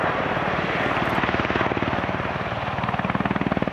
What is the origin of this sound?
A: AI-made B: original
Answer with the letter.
B